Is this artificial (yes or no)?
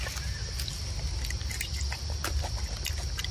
no